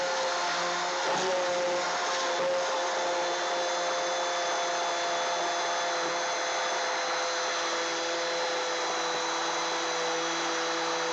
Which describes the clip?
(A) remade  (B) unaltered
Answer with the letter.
B